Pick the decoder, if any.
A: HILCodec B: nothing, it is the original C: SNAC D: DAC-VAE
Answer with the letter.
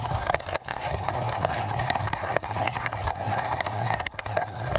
C